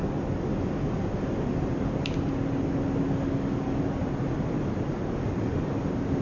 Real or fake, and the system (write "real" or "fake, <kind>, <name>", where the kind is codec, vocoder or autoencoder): real